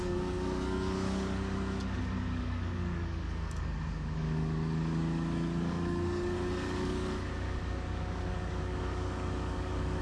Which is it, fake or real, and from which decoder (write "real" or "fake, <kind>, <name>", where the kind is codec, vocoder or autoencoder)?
fake, codec, DAC